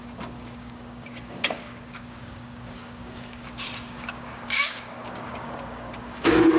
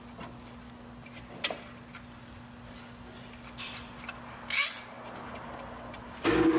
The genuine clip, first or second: second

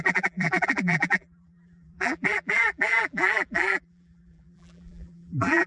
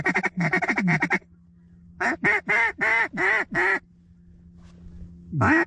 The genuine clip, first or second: second